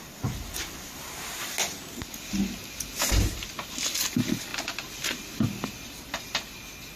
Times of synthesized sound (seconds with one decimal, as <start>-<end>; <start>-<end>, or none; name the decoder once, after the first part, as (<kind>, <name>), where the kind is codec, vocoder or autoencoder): none